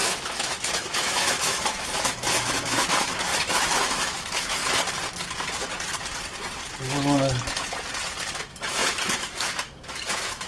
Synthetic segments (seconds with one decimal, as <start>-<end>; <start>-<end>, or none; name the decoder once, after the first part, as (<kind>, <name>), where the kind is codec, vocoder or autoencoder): 0.0-4.6 (autoencoder, DAC-VAE); 8.3-10.5